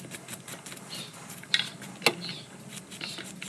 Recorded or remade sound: recorded